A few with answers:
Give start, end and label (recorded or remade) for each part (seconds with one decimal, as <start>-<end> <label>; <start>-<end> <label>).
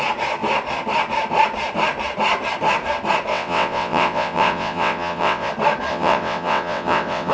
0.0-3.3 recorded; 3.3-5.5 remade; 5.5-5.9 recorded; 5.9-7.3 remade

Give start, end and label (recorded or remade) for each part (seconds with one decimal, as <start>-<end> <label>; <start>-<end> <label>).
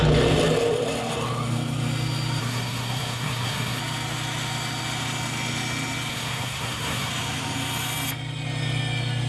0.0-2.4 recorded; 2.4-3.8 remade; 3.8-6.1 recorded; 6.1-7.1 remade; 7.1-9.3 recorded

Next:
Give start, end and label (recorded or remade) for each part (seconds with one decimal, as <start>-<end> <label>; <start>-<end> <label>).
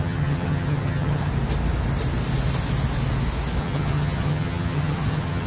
0.0-1.3 remade; 1.3-3.6 recorded; 3.6-5.5 remade